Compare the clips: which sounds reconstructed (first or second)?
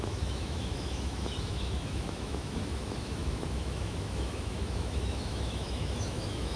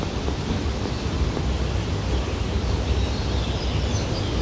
first